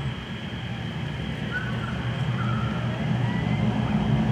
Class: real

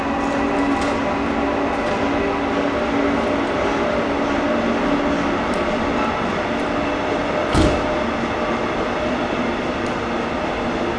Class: real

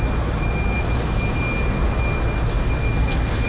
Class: real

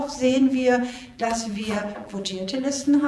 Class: fake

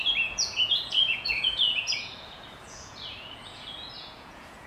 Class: fake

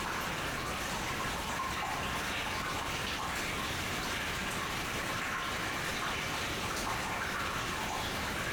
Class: real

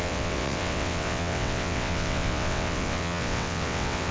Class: fake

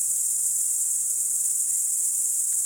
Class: real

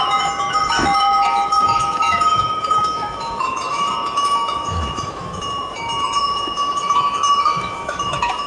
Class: fake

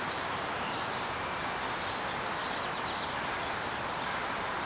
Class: real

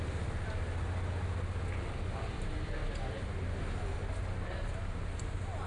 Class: real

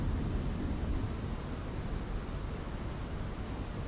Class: real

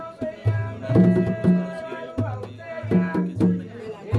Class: real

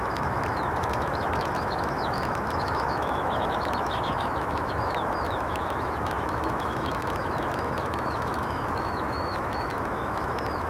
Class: fake